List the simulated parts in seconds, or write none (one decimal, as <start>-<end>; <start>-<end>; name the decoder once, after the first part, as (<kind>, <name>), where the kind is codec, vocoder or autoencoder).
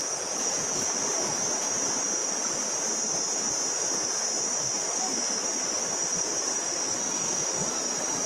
0.0-0.8 (vocoder, Vocos)